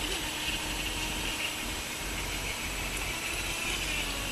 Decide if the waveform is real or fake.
real